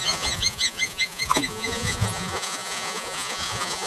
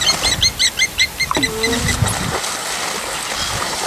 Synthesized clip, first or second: first